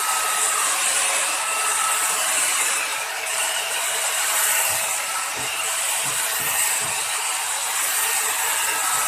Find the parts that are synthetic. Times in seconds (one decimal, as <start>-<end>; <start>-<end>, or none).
2.9-6.1